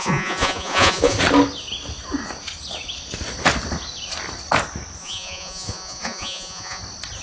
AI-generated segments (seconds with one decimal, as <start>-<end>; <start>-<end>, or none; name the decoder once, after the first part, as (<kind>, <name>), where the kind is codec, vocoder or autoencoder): 0.0-1.2 (vocoder, Vocos); 5.0-6.8